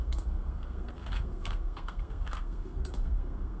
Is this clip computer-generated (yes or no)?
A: yes